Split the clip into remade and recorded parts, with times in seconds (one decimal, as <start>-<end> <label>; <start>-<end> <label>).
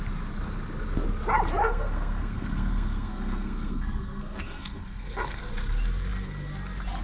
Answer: 0.0-1.6 recorded; 1.6-5.5 remade; 5.5-7.0 recorded